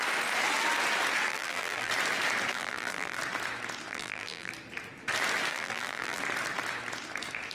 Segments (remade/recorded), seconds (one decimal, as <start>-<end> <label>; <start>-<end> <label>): 0.0-1.3 recorded; 1.3-1.9 remade; 1.9-2.5 recorded; 2.5-3.2 remade; 3.2-3.9 recorded; 3.9-4.5 remade; 4.5-5.5 recorded; 5.5-6.2 remade; 6.2-7.5 recorded